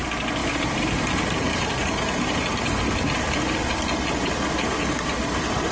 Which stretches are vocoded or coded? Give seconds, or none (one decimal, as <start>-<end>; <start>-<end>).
0.4-2.8